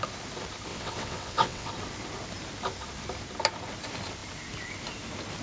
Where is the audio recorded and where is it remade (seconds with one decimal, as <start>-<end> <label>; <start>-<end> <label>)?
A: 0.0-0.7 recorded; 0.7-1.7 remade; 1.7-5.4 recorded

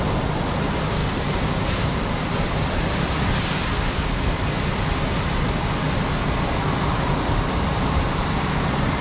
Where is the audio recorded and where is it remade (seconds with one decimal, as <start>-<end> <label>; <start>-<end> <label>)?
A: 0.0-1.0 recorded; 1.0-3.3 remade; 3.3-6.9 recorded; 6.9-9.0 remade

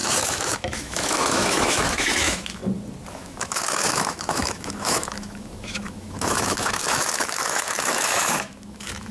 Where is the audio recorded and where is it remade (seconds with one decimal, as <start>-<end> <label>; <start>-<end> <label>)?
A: 0.0-2.6 remade; 2.6-3.1 recorded; 3.1-9.1 remade